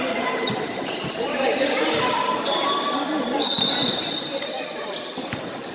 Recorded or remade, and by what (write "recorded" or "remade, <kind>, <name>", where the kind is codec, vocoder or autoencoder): remade, vocoder, BigVGAN v2